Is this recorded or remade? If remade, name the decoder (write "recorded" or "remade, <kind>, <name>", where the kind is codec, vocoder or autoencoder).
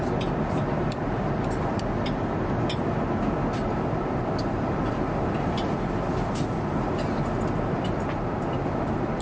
recorded